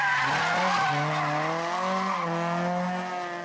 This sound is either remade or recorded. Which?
recorded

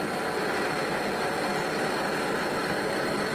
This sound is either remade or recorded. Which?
recorded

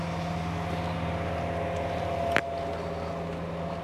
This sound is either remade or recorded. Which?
recorded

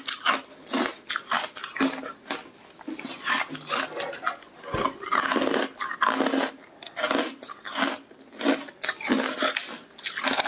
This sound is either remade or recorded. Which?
recorded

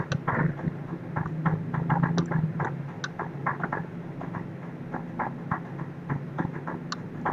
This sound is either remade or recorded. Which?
recorded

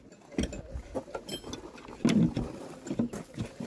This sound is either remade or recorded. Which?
recorded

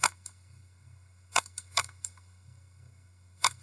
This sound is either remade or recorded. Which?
remade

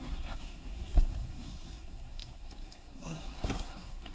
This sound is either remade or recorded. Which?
remade